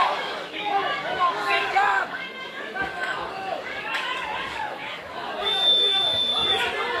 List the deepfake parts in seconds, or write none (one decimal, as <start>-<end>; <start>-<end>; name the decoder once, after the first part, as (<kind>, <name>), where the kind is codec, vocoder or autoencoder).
0.0-6.3 (codec, DAC)